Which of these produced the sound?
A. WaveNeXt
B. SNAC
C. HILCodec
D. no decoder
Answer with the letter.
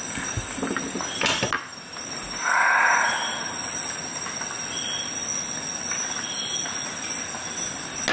D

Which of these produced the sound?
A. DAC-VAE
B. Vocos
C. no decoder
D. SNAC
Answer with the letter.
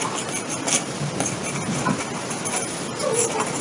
C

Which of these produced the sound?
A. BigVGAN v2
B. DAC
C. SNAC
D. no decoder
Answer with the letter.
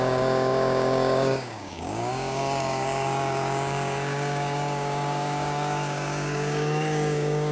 B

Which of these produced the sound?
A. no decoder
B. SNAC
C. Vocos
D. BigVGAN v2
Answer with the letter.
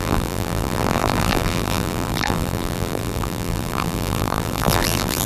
D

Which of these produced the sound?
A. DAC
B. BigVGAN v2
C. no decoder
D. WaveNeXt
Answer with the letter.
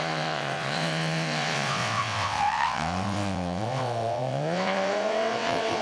D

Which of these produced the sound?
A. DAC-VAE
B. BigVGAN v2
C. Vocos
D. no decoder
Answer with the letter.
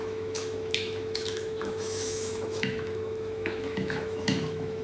A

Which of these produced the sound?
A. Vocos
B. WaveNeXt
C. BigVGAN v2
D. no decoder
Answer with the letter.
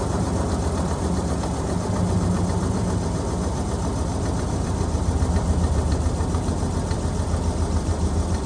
C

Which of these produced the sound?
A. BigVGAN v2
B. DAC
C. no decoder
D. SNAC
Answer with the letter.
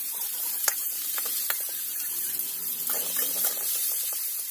A